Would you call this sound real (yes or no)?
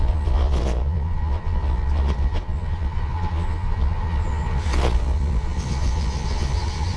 no